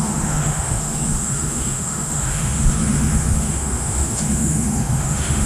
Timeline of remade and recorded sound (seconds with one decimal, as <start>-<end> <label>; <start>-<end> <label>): 0.0-5.5 remade